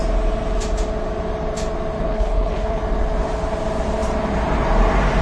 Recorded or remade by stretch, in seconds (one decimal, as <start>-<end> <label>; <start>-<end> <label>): 0.0-2.0 recorded; 2.0-2.8 remade; 2.8-5.2 recorded